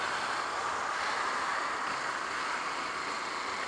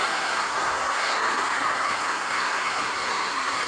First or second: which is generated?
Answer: second